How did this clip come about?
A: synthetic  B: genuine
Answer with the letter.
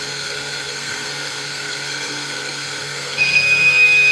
A